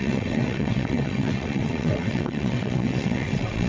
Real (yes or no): no